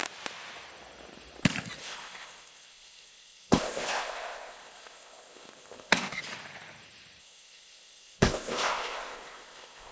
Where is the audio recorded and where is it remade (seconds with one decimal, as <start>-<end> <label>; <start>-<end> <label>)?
0.0-1.8 recorded; 1.8-6.2 remade; 6.2-7.2 recorded; 7.2-9.9 remade